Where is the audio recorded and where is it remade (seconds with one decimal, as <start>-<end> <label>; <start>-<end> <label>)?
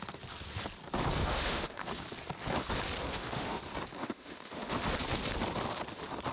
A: 0.0-1.2 recorded; 1.2-1.8 remade; 1.8-3.1 recorded; 3.1-3.6 remade; 3.6-4.0 recorded; 4.0-4.9 remade; 4.9-6.3 recorded